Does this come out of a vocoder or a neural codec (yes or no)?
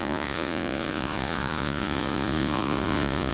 yes